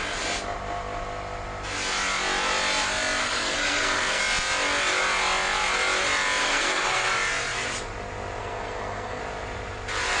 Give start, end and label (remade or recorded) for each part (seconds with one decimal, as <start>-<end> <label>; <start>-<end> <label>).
0.0-3.2 recorded; 3.2-4.2 remade; 4.2-6.4 recorded; 6.4-7.1 remade; 7.1-8.4 recorded; 8.4-9.2 remade; 9.2-10.2 recorded